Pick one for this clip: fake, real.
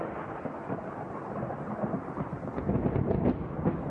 real